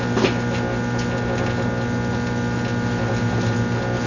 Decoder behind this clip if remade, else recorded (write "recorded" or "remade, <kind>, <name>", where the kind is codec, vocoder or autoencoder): recorded